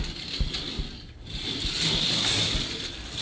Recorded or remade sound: recorded